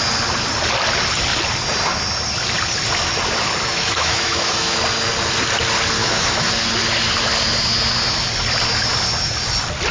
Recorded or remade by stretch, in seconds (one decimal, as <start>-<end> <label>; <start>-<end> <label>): 0.0-3.7 recorded; 3.7-4.8 remade; 4.8-6.0 recorded; 6.0-6.5 remade; 6.5-9.9 recorded